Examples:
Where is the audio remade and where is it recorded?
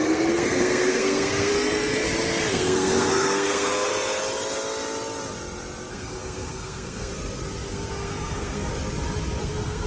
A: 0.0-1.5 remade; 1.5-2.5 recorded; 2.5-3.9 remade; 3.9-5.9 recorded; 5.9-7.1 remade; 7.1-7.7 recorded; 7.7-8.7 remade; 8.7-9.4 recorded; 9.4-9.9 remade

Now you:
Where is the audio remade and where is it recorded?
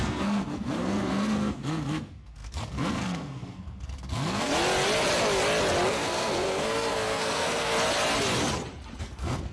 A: 0.0-4.5 remade; 4.5-5.9 recorded; 5.9-7.7 remade; 7.7-9.0 recorded; 9.0-9.5 remade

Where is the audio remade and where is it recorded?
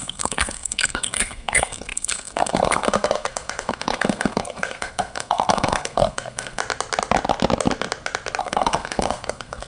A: 0.0-6.6 remade; 6.6-8.4 recorded; 8.4-9.7 remade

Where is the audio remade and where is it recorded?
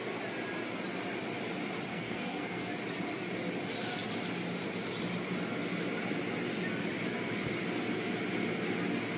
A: 0.0-1.9 recorded; 1.9-2.7 remade; 2.7-9.2 recorded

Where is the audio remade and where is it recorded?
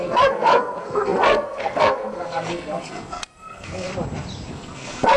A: 0.0-3.9 remade; 3.9-4.5 recorded; 4.5-5.2 remade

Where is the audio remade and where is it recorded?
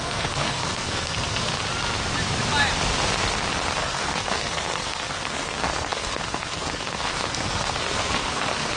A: 0.0-1.5 remade; 1.5-3.8 recorded; 3.8-8.8 remade